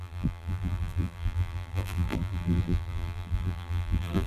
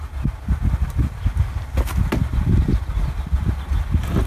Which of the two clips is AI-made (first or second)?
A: first